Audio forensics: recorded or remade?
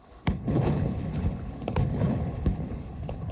remade